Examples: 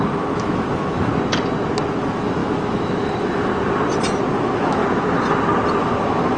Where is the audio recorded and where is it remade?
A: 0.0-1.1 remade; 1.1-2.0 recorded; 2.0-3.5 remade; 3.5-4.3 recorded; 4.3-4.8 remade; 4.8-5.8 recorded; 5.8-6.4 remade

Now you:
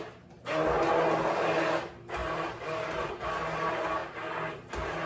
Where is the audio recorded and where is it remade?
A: 0.0-5.1 recorded

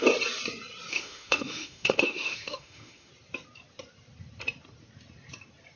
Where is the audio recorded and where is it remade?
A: 0.0-0.9 recorded; 0.9-3.1 remade; 3.1-5.8 recorded

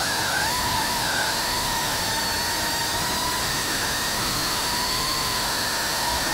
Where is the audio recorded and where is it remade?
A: 0.0-2.0 remade; 2.0-3.4 recorded; 3.4-6.3 remade

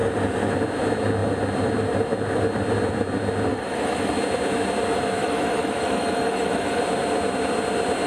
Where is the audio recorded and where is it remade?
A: 0.0-3.5 recorded; 3.5-4.1 remade; 4.1-5.2 recorded; 5.2-6.8 remade; 6.8-8.1 recorded

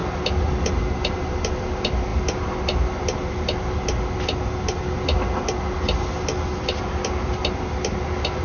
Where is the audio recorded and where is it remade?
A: 0.0-8.4 recorded

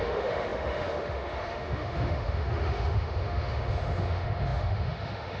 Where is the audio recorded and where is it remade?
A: 0.0-5.4 remade

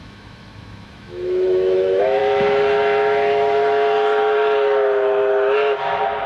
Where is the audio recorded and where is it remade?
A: 0.0-2.2 remade; 2.2-6.3 recorded